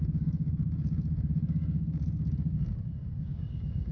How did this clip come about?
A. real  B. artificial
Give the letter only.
B